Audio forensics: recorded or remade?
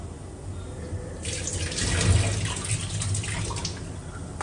recorded